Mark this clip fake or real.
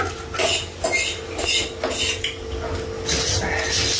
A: real